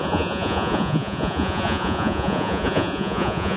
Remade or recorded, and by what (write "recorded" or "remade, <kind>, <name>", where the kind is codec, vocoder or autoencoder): remade, vocoder, Vocos